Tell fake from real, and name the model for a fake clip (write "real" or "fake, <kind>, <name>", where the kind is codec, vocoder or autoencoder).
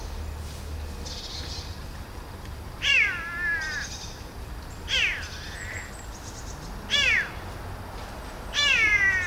real